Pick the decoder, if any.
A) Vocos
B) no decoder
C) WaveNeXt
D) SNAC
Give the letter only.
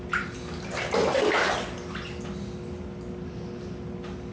B